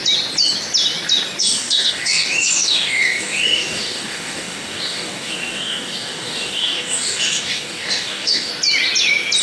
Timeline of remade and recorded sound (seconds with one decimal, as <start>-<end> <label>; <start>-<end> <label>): 0.0-1.4 recorded; 1.4-8.5 remade; 8.5-9.4 recorded